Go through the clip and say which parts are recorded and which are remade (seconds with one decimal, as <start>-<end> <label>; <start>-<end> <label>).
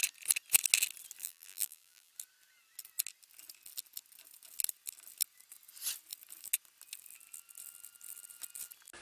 0.0-1.2 recorded; 1.2-2.1 remade; 2.1-9.0 recorded